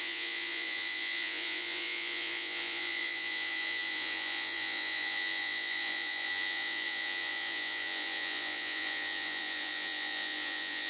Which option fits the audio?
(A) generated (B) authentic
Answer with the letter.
A